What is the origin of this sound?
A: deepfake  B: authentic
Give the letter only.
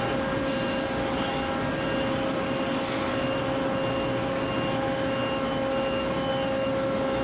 B